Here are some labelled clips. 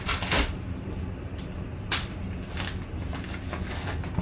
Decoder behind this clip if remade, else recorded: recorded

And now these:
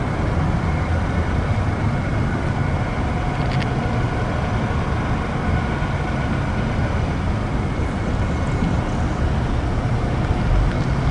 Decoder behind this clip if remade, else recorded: recorded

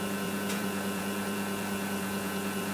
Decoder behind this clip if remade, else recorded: remade, vocoder, Vocos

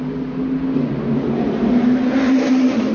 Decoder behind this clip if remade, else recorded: recorded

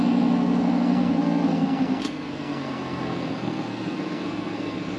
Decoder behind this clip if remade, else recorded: remade, codec, SNAC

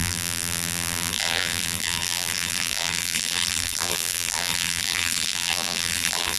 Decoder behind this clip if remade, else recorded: remade, vocoder, BigVGAN v2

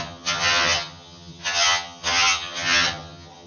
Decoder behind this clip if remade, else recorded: remade, vocoder, HiFi-GAN